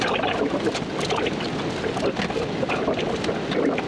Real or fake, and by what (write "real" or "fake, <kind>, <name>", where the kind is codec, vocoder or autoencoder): real